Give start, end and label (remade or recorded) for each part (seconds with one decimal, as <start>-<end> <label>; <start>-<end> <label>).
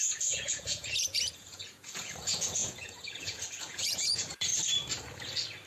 0.0-4.5 remade; 4.5-5.7 recorded